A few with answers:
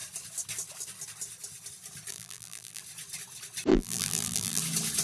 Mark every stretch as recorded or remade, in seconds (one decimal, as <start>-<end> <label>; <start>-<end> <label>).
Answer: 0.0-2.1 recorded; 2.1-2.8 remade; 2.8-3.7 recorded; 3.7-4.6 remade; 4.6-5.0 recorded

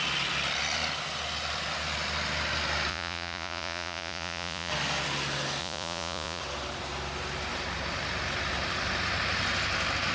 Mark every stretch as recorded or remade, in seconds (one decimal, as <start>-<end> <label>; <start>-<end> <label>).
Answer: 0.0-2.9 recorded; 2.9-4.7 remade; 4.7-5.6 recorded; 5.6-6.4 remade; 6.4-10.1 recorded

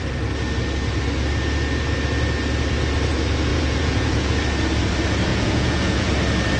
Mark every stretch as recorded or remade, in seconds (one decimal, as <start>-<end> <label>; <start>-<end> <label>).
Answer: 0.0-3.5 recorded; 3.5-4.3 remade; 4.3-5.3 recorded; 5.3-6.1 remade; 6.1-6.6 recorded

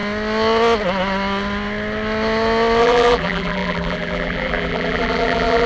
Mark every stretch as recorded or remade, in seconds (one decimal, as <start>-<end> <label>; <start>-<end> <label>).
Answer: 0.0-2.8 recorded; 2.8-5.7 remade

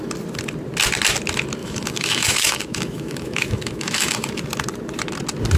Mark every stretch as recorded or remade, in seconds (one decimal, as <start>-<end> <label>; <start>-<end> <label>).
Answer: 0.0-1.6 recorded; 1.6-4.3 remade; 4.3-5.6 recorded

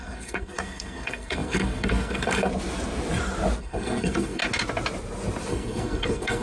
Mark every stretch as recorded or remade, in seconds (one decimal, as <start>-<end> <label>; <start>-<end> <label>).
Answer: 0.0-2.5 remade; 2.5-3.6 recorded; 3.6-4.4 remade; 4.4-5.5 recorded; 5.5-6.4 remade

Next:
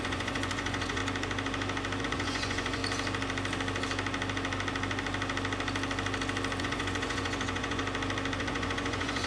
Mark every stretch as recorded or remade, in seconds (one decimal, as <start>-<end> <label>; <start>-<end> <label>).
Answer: 0.0-1.0 remade; 1.0-2.0 recorded; 2.0-2.8 remade; 2.8-6.6 recorded; 6.6-7.8 remade; 7.8-8.4 recorded; 8.4-9.3 remade